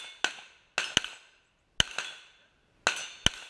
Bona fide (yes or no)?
yes